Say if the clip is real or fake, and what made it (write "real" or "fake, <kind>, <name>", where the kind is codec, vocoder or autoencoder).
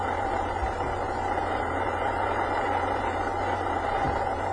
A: fake, vocoder, BigVGAN v2